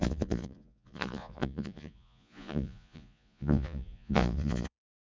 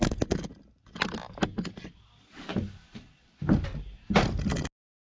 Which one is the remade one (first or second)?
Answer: first